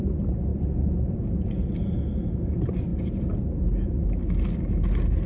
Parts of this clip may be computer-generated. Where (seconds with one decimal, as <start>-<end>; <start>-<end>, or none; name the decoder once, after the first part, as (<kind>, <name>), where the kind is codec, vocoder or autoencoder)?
none